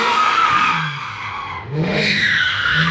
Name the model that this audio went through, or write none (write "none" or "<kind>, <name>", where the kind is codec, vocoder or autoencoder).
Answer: autoencoder, DAC-VAE